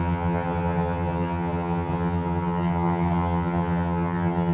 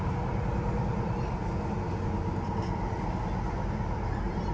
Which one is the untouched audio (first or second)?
second